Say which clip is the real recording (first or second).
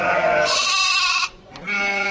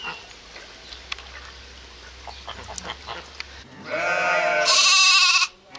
second